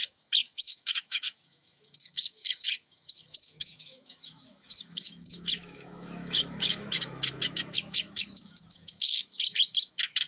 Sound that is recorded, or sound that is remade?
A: remade